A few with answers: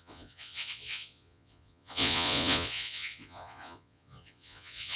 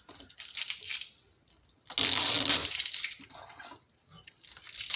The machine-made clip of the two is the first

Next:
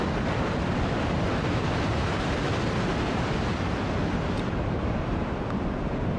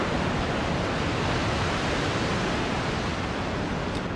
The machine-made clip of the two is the first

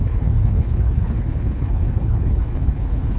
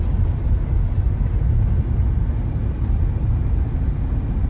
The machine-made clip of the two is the first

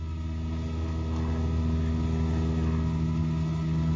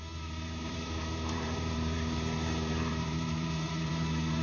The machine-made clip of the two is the second